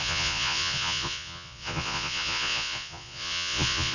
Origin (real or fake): fake